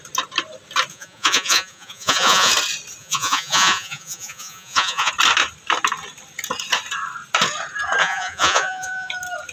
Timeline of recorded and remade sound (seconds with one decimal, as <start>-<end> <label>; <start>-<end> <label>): 0.0-0.9 recorded; 0.9-2.5 remade; 2.5-3.0 recorded; 3.0-5.1 remade; 5.1-8.0 recorded; 8.0-9.1 remade; 9.1-9.5 recorded